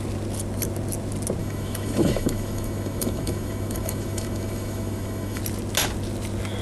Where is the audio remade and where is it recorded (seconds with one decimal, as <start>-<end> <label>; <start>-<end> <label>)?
0.0-1.4 recorded; 1.4-5.4 remade; 5.4-6.6 recorded